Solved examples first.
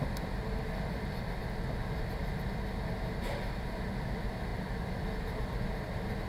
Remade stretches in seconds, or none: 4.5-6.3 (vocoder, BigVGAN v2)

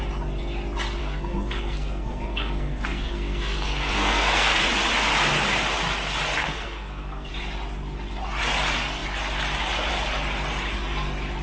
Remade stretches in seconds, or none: 1.0-4.6 (codec, SNAC); 6.4-7.3

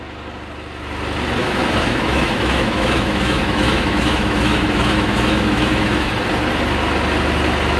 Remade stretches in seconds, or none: 1.4-6.1 (autoencoder, DAC-VAE)

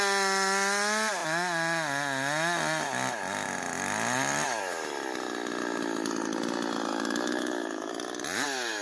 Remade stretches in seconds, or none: 6.9-7.9 (autoencoder, DAC-VAE)